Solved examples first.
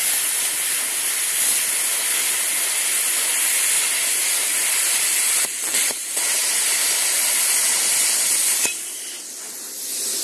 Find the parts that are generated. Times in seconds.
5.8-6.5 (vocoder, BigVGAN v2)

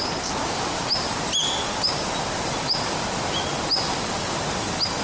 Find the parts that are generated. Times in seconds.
none

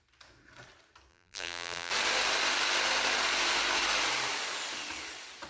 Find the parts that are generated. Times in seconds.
1.1-1.9 (vocoder, BigVGAN v2)

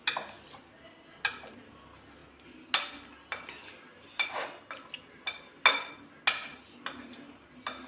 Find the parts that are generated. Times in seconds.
none

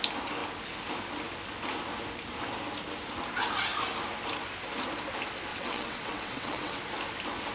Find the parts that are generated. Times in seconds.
5.5-6.8 (vocoder, WaveNeXt)

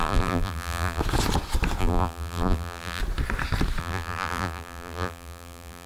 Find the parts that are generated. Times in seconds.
0.0-1.0 (vocoder, BigVGAN v2); 1.8-3.0; 3.8-5.9

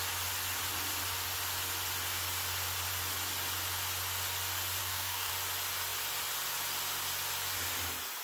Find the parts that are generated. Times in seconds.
4.8-5.3 (codec, DAC)